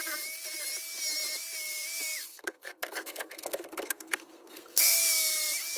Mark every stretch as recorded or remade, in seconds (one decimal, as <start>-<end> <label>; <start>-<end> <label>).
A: 0.0-2.2 recorded; 2.2-5.0 remade; 5.0-5.8 recorded